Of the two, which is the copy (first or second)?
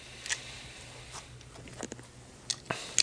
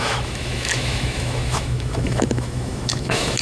second